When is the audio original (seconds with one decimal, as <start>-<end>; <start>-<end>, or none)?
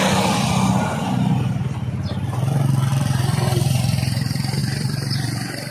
0.0-2.9; 3.8-4.6